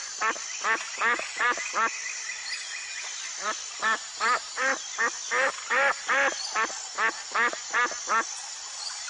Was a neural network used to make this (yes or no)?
no